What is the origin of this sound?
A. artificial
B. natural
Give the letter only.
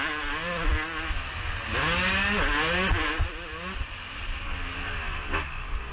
B